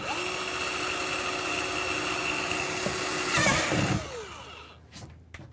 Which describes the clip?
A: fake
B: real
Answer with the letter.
B